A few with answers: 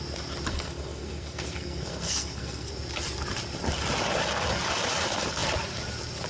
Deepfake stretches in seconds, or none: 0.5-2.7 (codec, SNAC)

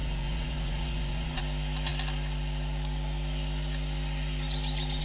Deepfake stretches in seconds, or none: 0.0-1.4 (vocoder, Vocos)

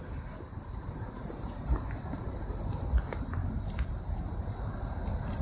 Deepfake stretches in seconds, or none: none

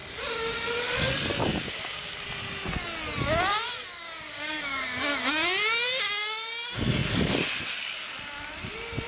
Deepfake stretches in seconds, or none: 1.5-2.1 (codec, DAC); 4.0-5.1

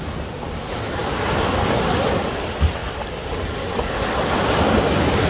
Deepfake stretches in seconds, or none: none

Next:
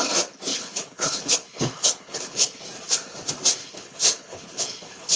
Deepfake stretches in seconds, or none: 0.5-2.6 (codec, HILCodec); 3.6-5.2

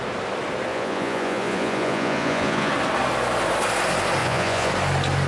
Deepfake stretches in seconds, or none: 0.7-2.7 (vocoder, Vocos); 4.2-4.7

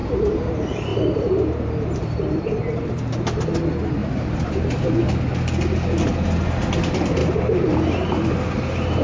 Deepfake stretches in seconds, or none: 0.0-0.5 (vocoder, BigVGAN v2); 0.9-2.9; 4.0-5.2; 7.2-9.0